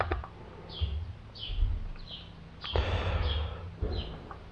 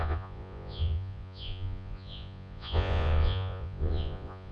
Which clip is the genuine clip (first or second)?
first